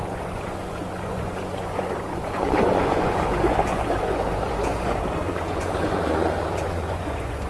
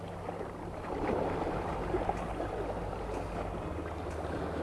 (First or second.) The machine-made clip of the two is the first